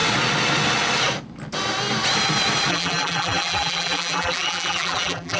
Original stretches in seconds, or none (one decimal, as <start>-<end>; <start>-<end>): 0.0-2.7